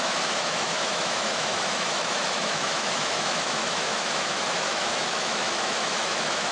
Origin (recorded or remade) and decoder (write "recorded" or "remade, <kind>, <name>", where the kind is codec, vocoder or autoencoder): remade, autoencoder, DAC-VAE